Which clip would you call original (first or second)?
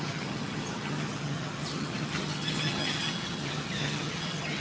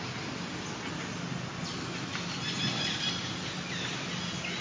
second